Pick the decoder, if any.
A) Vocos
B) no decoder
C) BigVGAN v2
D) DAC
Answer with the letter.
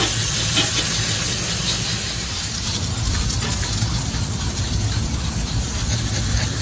B